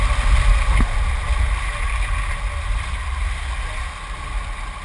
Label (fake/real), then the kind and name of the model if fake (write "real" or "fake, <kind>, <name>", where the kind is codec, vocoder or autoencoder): real